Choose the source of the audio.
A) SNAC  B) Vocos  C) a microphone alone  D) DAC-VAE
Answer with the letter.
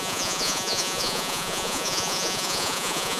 B